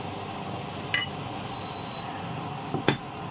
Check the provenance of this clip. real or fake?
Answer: real